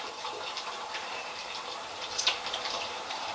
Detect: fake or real fake